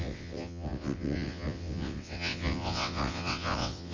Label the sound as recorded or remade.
remade